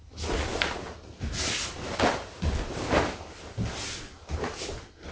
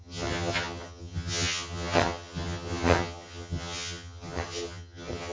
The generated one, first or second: second